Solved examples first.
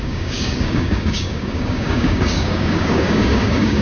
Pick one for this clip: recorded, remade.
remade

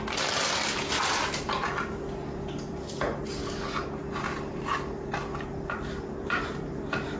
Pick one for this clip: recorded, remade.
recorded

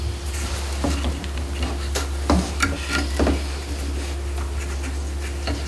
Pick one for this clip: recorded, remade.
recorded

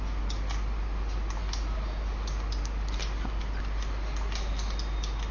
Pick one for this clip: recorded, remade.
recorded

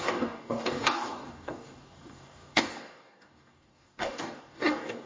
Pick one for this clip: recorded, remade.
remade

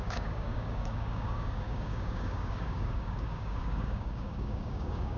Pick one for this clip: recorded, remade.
remade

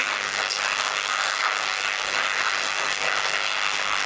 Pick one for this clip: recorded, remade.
remade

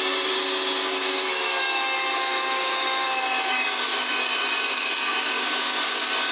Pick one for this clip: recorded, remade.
remade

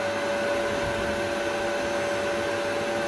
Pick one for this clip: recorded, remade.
recorded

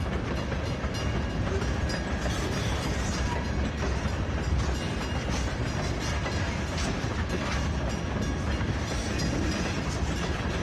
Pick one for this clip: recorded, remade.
recorded